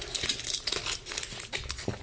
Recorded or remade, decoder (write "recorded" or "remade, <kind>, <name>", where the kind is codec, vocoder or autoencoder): recorded